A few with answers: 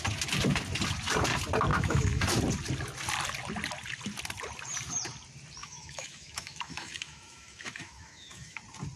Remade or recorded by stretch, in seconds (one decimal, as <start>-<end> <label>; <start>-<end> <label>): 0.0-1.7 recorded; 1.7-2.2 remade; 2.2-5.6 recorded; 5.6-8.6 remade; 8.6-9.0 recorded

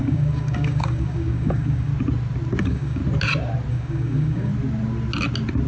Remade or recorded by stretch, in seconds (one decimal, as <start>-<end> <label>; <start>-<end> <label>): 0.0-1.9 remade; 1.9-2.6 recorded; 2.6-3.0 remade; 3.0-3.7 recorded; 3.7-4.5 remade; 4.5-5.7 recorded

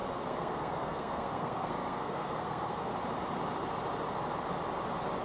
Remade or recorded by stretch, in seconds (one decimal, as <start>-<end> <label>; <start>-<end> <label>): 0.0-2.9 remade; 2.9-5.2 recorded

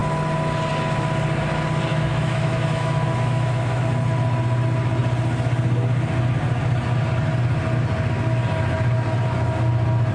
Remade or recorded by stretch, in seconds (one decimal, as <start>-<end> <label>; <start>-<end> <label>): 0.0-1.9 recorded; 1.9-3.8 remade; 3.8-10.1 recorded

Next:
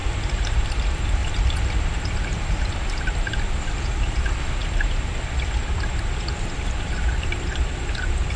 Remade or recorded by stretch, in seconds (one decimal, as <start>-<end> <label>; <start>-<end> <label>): 0.0-1.2 remade; 1.2-1.9 recorded; 1.9-8.4 remade

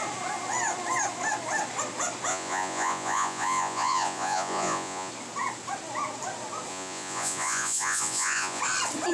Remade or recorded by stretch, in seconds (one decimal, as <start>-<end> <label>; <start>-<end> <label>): 0.0-2.3 recorded; 2.3-5.1 remade; 5.1-6.7 recorded; 6.7-8.6 remade; 8.6-9.1 recorded

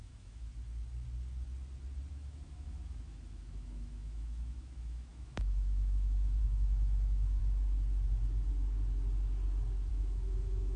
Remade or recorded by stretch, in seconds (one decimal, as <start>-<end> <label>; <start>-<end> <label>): 0.0-0.5 remade; 0.5-2.1 recorded; 2.1-7.4 remade; 7.4-9.9 recorded; 9.9-10.8 remade

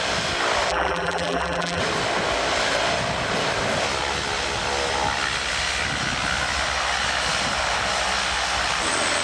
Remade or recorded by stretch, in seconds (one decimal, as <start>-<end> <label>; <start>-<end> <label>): 0.0-0.7 recorded; 0.7-1.8 remade; 1.8-9.2 recorded